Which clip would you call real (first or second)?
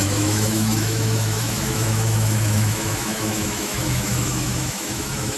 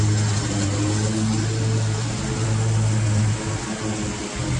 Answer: second